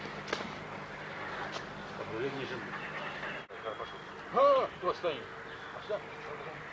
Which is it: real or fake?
real